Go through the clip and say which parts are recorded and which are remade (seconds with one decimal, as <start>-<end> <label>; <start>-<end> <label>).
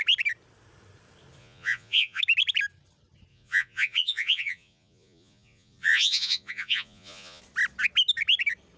0.0-1.4 recorded; 1.4-2.2 remade; 2.2-3.3 recorded; 3.3-7.4 remade; 7.4-8.8 recorded